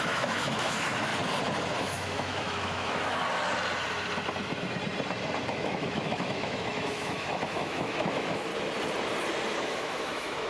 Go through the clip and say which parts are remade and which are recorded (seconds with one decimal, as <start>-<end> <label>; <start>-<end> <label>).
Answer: 0.0-1.1 remade; 1.1-1.8 recorded; 1.8-3.2 remade; 3.2-5.5 recorded; 5.5-8.5 remade; 8.5-9.6 recorded; 9.6-10.5 remade